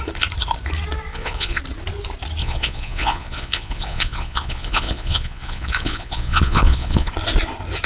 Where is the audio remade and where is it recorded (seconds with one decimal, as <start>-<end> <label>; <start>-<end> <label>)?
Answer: 0.0-1.1 recorded; 1.1-1.6 remade; 1.6-2.4 recorded; 2.4-7.1 remade; 7.1-7.9 recorded